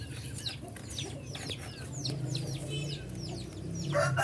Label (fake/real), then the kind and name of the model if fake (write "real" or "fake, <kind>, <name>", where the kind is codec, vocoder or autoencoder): real